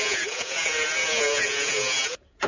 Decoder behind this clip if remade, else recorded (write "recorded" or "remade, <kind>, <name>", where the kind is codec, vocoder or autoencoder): remade, vocoder, Vocos